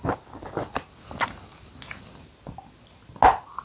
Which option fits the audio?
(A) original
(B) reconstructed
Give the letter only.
A